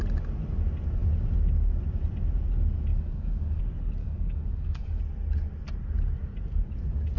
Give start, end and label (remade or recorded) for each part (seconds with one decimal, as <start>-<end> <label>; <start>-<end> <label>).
0.0-2.9 recorded; 2.9-3.6 remade; 3.6-4.0 recorded; 4.0-5.0 remade; 5.0-7.2 recorded